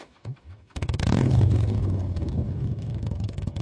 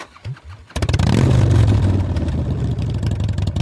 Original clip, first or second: second